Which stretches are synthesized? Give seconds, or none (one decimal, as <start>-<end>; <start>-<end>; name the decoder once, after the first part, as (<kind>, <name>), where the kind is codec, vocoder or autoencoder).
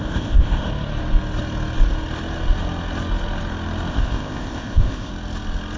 0.0-0.7 (codec, ZipCodec); 3.9-5.1